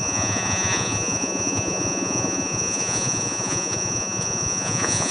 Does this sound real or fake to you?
fake